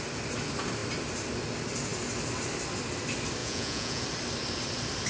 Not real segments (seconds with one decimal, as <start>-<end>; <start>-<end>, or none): 3.4-4.0